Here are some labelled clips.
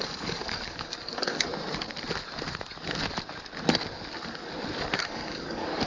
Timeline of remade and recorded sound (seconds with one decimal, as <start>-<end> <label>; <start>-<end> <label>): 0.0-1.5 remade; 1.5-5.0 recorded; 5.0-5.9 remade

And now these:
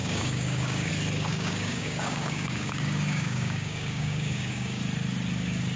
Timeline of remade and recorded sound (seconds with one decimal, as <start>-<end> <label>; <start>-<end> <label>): 0.0-0.9 remade; 0.9-1.3 recorded; 1.3-4.8 remade; 4.8-5.8 recorded

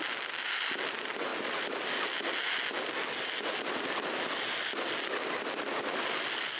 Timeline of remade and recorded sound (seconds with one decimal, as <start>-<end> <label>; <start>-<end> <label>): 0.0-6.6 recorded